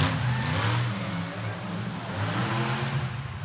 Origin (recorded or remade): recorded